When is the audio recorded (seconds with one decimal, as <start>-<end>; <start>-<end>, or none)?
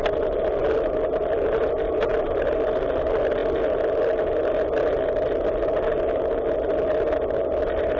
0.0-8.0